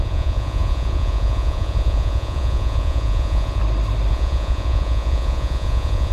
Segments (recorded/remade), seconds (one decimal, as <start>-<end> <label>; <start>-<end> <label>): 0.0-3.6 remade; 3.6-4.1 recorded; 4.1-6.1 remade